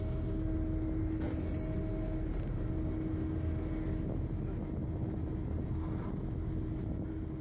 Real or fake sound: real